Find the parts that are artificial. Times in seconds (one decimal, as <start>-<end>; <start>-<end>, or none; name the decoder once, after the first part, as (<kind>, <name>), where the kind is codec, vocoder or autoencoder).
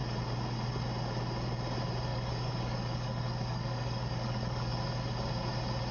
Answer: 2.1-4.7 (codec, DAC)